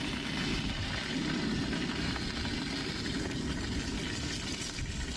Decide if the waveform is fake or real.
real